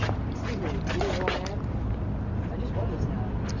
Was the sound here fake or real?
real